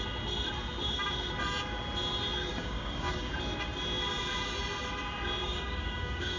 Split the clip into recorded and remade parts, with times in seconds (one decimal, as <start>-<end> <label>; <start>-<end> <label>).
0.0-2.5 recorded; 2.5-3.3 remade; 3.3-5.4 recorded; 5.4-6.4 remade